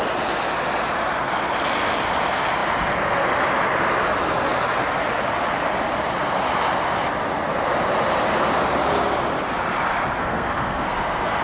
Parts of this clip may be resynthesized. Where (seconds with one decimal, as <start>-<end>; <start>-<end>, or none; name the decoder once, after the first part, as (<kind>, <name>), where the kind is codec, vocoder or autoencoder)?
10.2-11.4 (codec, SNAC)